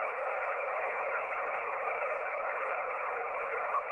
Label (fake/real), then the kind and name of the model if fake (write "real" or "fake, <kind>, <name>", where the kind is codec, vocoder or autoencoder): fake, codec, HILCodec